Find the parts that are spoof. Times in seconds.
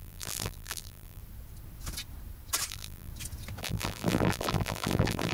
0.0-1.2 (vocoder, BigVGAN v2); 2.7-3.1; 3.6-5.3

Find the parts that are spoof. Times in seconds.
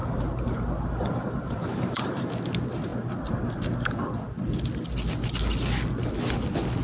0.0-2.2 (vocoder, BigVGAN v2)